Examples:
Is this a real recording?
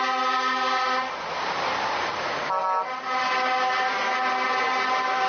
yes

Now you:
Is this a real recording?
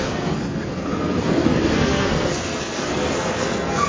no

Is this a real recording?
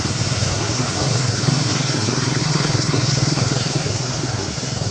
no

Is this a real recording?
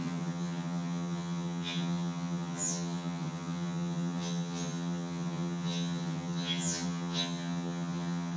no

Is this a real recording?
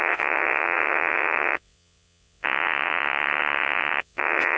no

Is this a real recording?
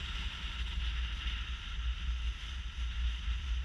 yes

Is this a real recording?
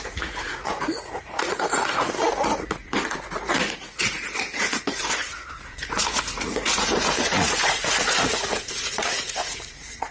no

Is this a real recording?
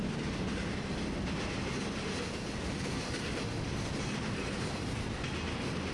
yes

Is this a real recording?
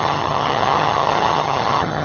no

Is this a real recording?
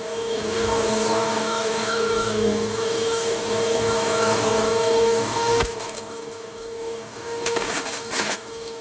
no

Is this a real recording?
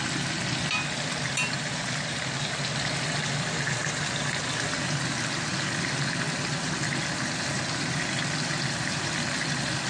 yes